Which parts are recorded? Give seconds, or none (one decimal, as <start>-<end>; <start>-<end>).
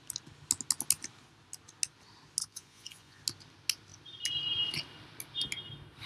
0.0-2.4; 3.2-6.1